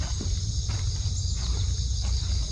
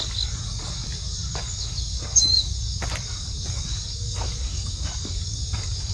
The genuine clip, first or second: first